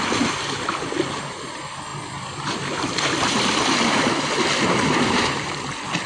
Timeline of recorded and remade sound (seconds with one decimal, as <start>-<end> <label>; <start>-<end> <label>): 0.0-1.9 recorded; 1.9-5.6 remade; 5.6-6.1 recorded